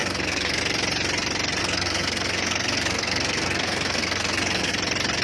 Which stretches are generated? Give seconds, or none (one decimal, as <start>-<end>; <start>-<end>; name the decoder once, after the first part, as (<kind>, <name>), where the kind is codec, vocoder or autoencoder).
0.0-0.6 (codec, SNAC); 1.6-4.7